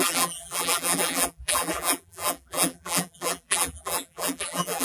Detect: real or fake fake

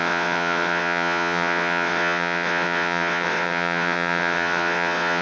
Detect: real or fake fake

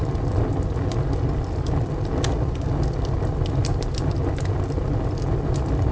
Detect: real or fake real